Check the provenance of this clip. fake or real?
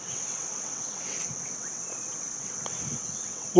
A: fake